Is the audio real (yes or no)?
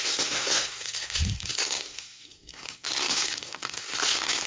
no